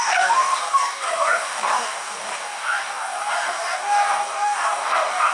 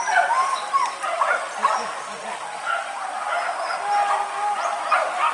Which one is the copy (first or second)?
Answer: first